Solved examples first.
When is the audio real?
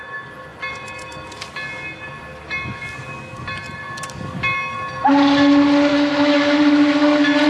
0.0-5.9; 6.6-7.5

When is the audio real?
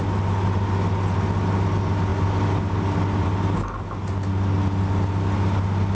0.0-5.9